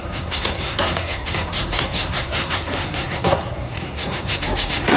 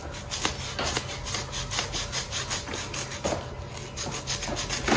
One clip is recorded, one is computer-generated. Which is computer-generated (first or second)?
first